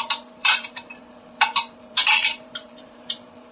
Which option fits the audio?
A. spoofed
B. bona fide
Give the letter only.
A